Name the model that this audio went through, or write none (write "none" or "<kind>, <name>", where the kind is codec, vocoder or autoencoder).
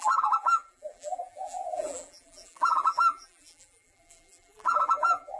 vocoder, BigVGAN v2